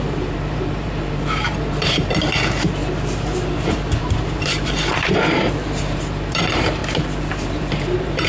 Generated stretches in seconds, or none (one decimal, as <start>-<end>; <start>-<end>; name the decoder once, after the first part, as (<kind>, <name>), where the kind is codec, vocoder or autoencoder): 0.0-2.8 (vocoder, BigVGAN v2); 4.0-6.8; 7.3-8.3